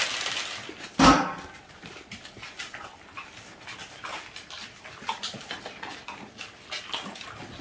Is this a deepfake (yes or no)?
no